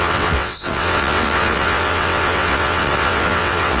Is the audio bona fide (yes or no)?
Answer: no